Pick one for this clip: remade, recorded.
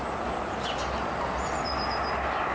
recorded